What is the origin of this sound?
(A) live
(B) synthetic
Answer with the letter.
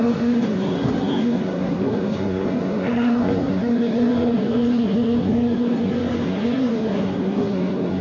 B